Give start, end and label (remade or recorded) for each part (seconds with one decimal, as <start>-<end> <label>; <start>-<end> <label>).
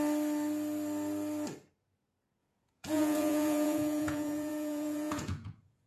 0.0-2.4 recorded; 2.4-5.9 remade